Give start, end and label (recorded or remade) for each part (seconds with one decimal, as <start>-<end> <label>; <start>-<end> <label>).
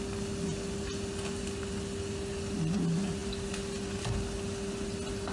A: 0.0-5.3 recorded